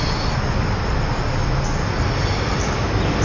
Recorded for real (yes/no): yes